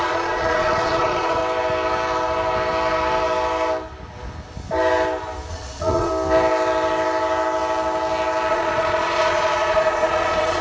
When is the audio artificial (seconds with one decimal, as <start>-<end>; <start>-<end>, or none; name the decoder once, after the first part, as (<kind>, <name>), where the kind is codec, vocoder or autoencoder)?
0.0-1.4 (vocoder, Vocos); 5.5-6.1; 8.5-10.6